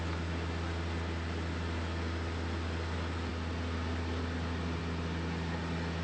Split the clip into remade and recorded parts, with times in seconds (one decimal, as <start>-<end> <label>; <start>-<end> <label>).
0.0-6.0 recorded